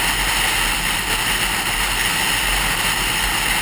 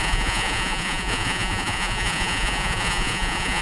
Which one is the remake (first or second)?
second